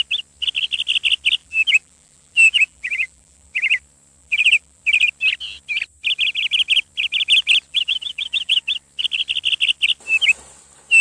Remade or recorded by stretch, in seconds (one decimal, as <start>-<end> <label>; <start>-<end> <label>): 0.0-1.4 recorded; 1.4-3.5 remade; 3.5-4.2 recorded; 4.2-4.8 remade; 4.8-7.7 recorded; 7.7-8.6 remade; 8.6-11.0 recorded